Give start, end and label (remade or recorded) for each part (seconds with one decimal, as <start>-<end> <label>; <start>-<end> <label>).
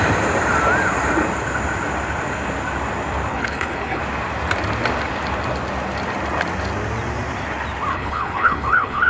0.0-3.3 recorded; 3.3-4.0 remade; 4.0-7.9 recorded; 7.9-9.1 remade